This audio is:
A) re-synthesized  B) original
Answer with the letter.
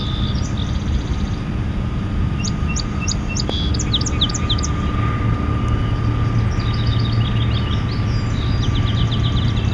B